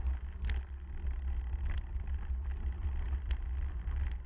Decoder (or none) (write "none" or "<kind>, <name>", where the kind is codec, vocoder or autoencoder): none